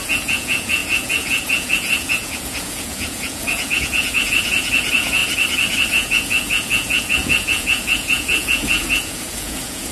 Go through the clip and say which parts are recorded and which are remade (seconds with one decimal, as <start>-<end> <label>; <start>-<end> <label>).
0.0-5.2 remade; 5.2-5.9 recorded; 5.9-9.9 remade